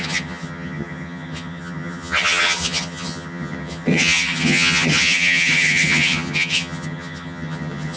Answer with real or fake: fake